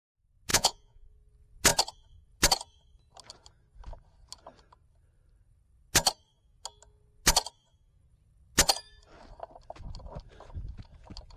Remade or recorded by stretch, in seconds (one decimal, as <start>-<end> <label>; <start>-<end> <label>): 0.0-0.5 recorded; 0.5-1.1 remade; 1.1-11.4 recorded